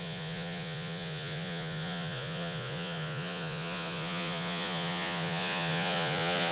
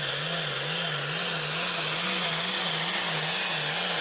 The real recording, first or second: second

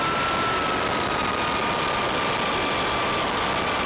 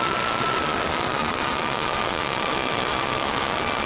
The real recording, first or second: first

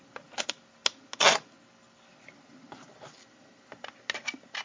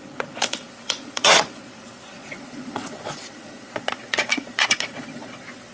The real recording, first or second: first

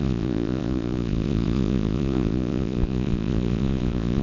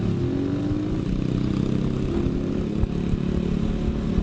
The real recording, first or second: second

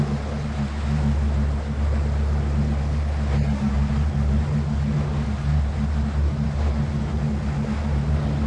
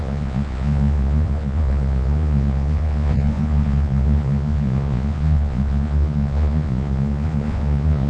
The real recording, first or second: first